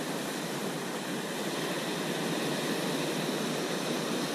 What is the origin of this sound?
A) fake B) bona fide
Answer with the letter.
B